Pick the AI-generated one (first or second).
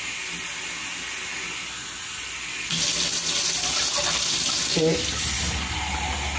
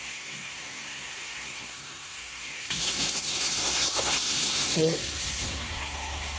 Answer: second